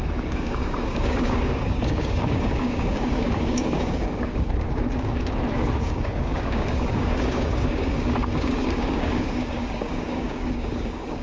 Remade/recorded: remade